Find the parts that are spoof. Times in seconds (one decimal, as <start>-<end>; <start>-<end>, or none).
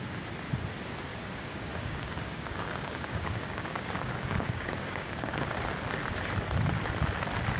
1.1-5.5